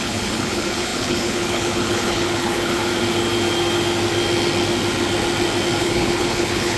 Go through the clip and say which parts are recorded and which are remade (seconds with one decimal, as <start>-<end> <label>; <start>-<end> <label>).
0.0-2.9 remade; 2.9-5.8 recorded; 5.8-6.8 remade